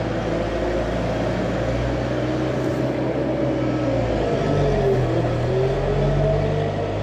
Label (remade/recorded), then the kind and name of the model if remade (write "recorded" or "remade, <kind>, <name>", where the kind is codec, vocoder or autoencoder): recorded